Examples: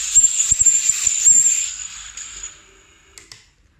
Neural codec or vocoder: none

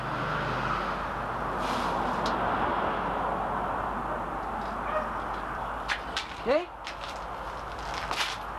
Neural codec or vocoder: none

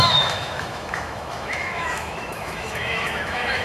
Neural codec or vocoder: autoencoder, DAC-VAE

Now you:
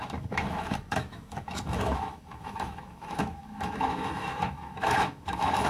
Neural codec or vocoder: autoencoder, DAC-VAE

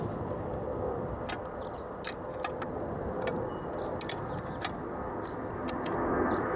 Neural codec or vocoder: none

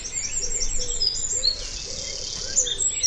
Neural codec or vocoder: none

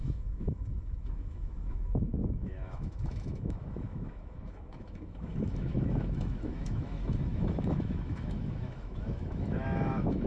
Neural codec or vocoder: autoencoder, DAC-VAE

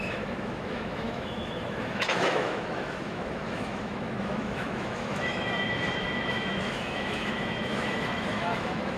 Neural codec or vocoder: autoencoder, DAC-VAE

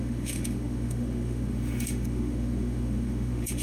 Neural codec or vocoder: autoencoder, DAC-VAE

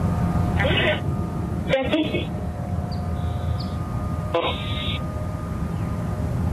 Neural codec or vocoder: none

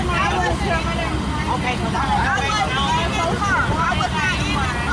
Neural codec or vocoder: none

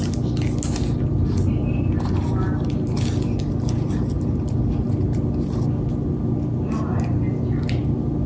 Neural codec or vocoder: none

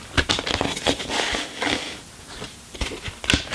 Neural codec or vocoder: none